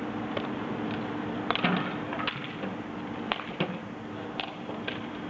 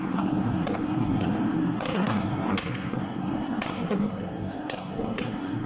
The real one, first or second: first